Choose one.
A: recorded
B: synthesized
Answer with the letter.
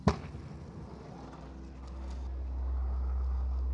A